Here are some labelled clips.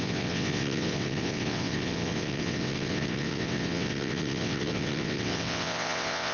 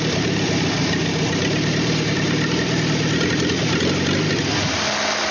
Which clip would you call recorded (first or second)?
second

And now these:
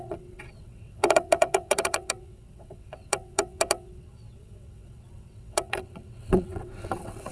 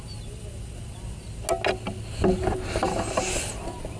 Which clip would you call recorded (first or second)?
second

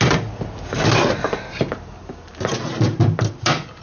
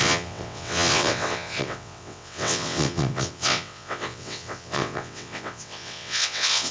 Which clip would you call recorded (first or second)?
first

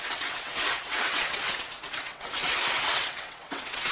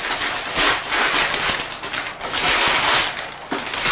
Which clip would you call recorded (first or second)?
second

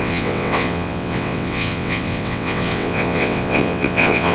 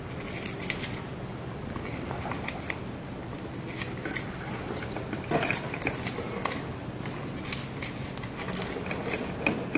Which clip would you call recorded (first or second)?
second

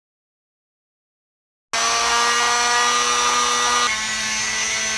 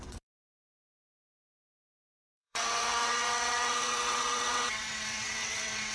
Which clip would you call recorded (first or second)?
first